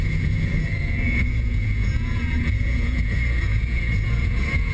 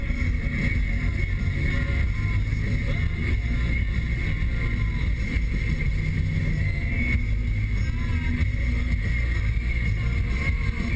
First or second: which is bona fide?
second